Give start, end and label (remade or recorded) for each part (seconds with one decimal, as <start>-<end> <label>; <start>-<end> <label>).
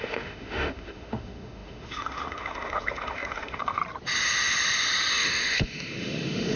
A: 0.0-3.8 remade; 3.8-5.1 recorded; 5.1-6.6 remade